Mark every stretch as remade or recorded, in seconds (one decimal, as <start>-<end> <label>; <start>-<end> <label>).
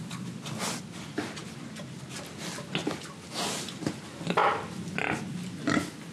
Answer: 0.0-6.1 recorded